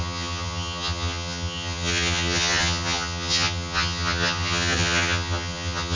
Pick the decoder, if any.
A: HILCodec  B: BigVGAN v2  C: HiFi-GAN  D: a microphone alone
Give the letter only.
C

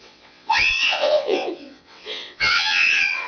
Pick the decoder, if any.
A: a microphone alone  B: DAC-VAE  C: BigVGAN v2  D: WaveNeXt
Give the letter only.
D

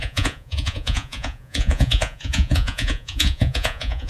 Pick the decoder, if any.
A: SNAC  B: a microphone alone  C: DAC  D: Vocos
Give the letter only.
D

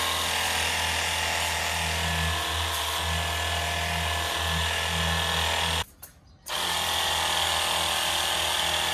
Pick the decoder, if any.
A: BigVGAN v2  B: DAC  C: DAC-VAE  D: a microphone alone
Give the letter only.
D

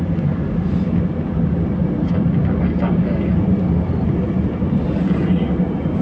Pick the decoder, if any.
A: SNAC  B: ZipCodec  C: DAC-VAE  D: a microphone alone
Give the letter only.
D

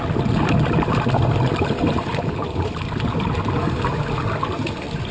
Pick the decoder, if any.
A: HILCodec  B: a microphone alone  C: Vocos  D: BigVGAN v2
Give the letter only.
B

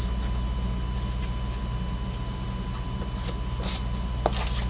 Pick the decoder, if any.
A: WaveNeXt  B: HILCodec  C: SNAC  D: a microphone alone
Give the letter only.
D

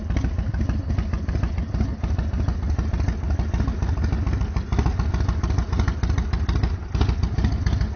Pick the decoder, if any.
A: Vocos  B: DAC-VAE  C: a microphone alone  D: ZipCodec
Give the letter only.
C